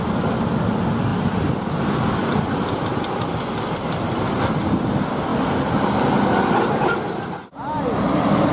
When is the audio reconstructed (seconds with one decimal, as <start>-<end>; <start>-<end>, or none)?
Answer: none